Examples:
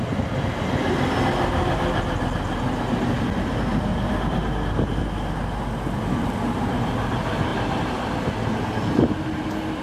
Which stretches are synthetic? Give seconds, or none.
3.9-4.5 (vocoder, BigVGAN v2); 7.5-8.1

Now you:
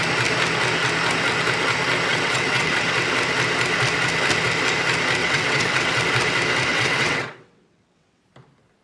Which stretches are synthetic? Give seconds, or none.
2.1-2.7 (vocoder, WaveNeXt); 5.2-6.0; 6.7-8.2

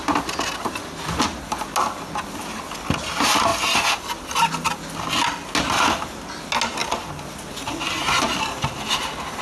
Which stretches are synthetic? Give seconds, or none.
none

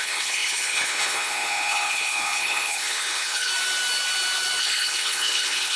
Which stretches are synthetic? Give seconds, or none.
0.0-3.5 (codec, HILCodec); 4.6-5.8

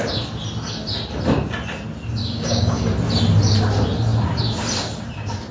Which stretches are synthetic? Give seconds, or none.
2.2-2.8 (codec, DAC)

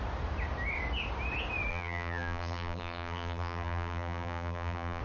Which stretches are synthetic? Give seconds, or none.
1.7-5.0 (vocoder, BigVGAN v2)

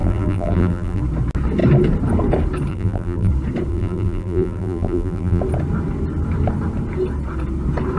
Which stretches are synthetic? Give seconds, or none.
0.0-1.0 (vocoder, BigVGAN v2); 2.7-3.3; 3.7-5.4